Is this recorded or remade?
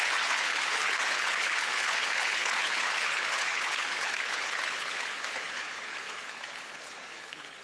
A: remade